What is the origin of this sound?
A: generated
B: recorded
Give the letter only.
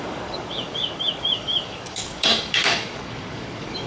A